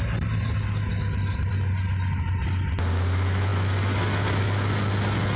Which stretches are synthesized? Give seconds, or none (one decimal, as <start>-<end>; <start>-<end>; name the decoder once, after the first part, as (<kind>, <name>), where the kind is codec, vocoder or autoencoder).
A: none